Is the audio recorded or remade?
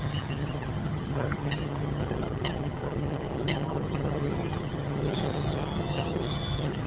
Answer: remade